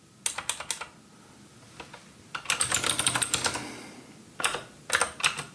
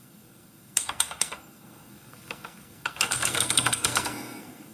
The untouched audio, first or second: first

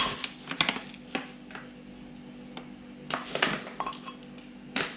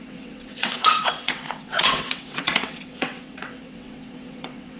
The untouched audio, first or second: first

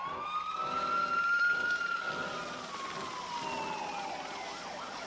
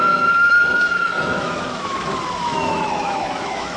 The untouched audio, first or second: first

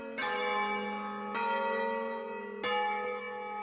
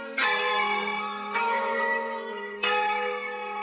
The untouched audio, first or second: first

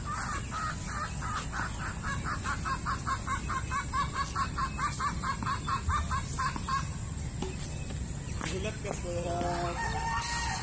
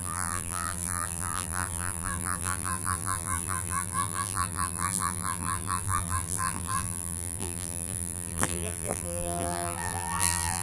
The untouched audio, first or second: first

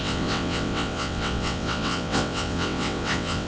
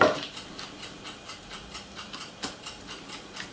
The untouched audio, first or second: second